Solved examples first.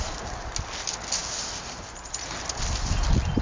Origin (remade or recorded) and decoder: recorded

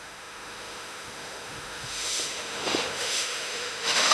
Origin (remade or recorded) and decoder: remade, autoencoder, DAC-VAE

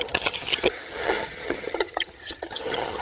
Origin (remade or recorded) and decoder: remade, vocoder, HiFi-GAN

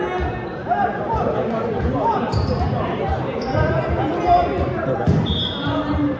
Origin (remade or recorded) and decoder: recorded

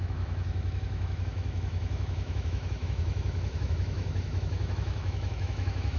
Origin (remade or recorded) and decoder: remade, autoencoder, DAC-VAE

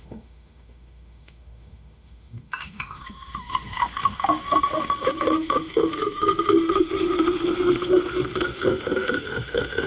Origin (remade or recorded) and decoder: remade, autoencoder, DAC-VAE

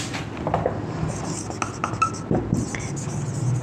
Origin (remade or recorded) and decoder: recorded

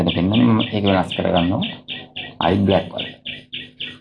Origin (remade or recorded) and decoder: recorded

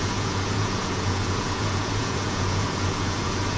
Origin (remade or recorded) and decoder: remade, vocoder, Vocos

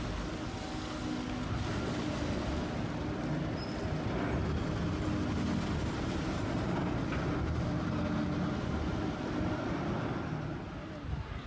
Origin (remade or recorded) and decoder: recorded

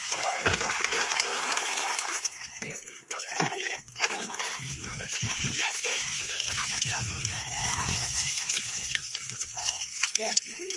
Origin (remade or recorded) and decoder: remade, codec, SNAC